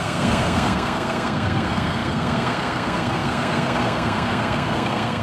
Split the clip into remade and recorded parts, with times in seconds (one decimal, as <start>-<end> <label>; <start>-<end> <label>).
0.0-5.2 remade